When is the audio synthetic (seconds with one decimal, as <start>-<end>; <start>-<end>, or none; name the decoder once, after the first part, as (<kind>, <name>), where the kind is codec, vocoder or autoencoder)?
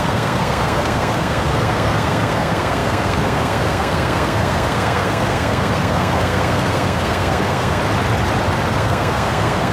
0.0-7.8 (codec, SNAC); 8.7-9.7